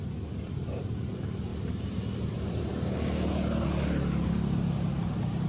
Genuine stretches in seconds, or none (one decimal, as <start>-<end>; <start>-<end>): 0.0-0.5; 1.5-2.1; 2.7-5.5